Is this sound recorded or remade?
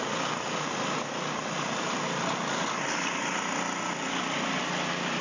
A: recorded